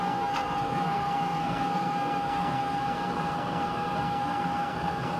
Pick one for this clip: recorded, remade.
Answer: remade